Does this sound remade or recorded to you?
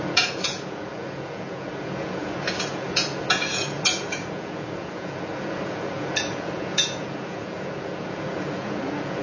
remade